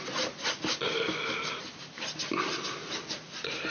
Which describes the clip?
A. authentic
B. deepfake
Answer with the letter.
A